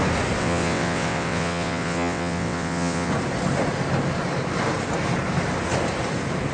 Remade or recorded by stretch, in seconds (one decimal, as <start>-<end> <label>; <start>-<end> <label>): 0.0-0.4 recorded; 0.4-3.1 remade; 3.1-6.5 recorded